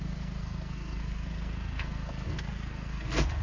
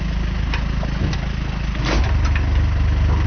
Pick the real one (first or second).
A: second